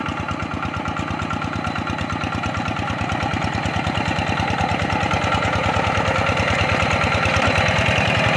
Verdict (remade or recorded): recorded